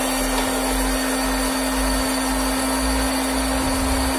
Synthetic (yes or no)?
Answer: no